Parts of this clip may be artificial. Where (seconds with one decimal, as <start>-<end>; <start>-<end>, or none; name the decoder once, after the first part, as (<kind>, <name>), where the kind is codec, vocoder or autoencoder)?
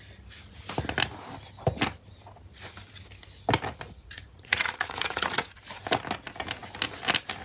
4.0-5.6 (vocoder, Vocos)